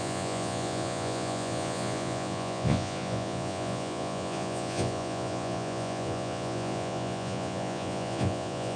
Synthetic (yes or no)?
yes